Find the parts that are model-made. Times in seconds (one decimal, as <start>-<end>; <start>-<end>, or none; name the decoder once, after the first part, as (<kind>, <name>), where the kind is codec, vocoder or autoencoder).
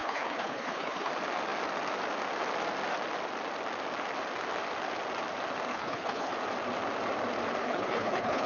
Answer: 0.0-1.1 (codec, HILCodec); 5.7-6.3; 7.6-8.5